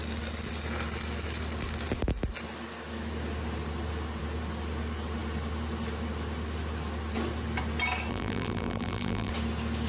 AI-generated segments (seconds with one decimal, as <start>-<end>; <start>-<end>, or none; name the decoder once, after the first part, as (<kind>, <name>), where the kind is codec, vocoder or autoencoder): 8.1-9.3 (vocoder, BigVGAN v2)